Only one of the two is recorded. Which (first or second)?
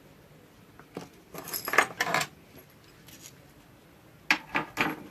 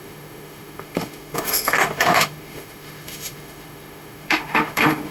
first